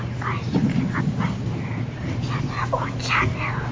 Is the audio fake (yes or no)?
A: no